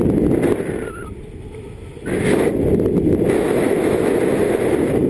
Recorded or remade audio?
recorded